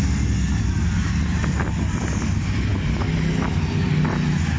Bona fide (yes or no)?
yes